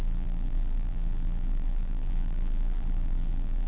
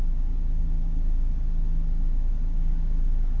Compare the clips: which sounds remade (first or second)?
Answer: first